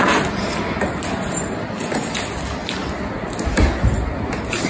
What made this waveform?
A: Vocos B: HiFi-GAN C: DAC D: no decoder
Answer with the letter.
D